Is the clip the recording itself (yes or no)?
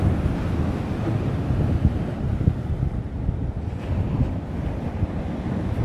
yes